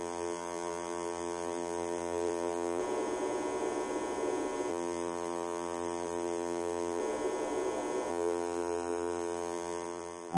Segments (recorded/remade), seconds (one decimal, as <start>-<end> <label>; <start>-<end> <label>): 0.0-2.8 remade; 2.8-4.7 recorded; 4.7-7.0 remade; 7.0-8.1 recorded; 8.1-10.4 remade